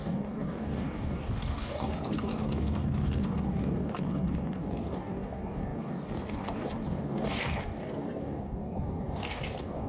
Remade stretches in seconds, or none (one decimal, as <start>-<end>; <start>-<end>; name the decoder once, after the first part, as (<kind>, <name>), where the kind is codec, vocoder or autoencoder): 0.0-9.9 (codec, DAC)